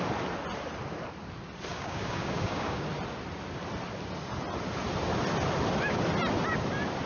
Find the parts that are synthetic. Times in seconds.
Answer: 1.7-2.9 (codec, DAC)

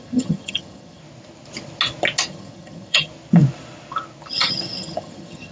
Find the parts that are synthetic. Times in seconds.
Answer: 0.0-1.0 (vocoder, HiFi-GAN); 2.3-3.1; 4.3-5.5

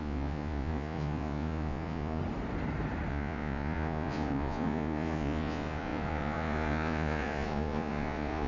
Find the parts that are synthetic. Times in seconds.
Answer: 0.0-2.2 (vocoder, Vocos); 3.1-8.5

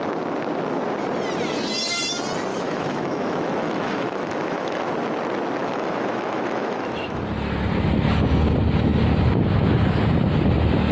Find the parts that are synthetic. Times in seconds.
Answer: 2.5-4.8 (autoencoder, DAC-VAE); 5.6-7.2

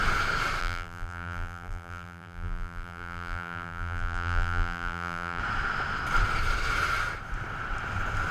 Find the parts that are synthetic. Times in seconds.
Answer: 0.6-5.4 (vocoder, BigVGAN v2)